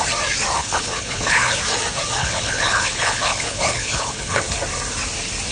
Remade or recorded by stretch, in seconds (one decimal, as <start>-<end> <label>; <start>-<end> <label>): 0.0-0.6 recorded; 0.6-1.6 remade; 1.6-2.2 recorded; 2.2-4.4 remade; 4.4-5.5 recorded